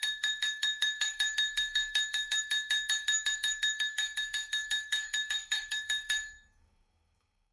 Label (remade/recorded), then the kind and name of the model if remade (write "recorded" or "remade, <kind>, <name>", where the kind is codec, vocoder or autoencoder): remade, codec, DAC